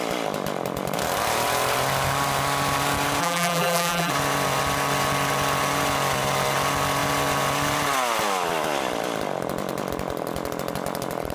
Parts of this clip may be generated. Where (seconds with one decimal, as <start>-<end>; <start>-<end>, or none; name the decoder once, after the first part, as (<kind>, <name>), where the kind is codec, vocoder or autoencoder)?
3.2-4.1 (vocoder, BigVGAN v2)